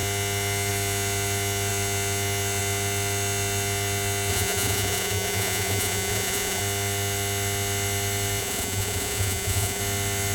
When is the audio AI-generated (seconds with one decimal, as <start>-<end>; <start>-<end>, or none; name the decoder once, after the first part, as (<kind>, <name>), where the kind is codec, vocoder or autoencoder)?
4.3-6.6 (vocoder, Vocos); 8.4-9.8